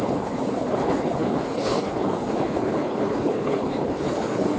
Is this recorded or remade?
remade